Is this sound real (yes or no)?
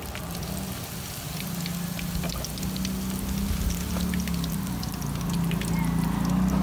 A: yes